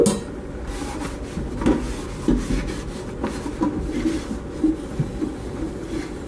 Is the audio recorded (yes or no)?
yes